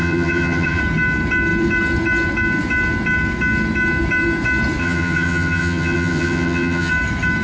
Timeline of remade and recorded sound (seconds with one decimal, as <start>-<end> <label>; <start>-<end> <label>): 0.0-0.8 remade; 0.8-4.8 recorded; 4.8-6.9 remade; 6.9-7.4 recorded